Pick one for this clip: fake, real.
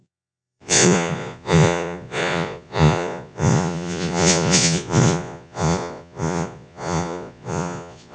fake